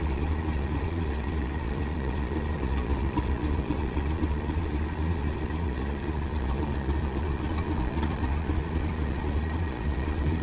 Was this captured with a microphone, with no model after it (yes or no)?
no